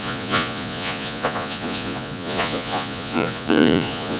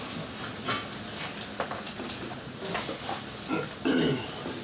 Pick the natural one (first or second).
second